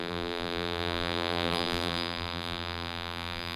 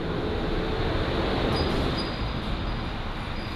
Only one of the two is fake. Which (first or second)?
first